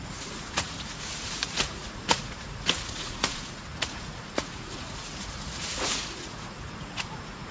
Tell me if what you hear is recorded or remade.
remade